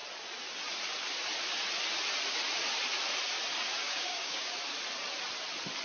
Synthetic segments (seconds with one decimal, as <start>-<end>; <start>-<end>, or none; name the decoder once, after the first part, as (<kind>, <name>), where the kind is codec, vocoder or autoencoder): 3.8-4.5 (codec, DAC)